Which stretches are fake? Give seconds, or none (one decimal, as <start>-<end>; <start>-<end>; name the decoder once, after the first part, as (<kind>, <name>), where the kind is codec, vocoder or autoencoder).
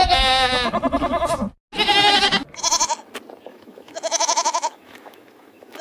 3.5-5.8 (autoencoder, DAC-VAE)